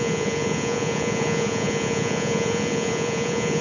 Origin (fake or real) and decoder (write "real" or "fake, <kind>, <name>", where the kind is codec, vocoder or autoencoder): fake, vocoder, Vocos